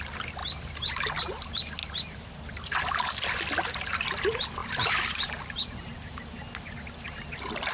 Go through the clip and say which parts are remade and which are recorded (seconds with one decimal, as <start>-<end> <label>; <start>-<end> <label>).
0.0-0.4 remade; 0.4-1.2 recorded; 1.2-7.7 remade